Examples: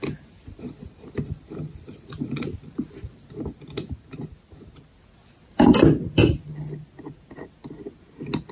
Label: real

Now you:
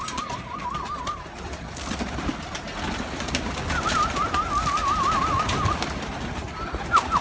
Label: real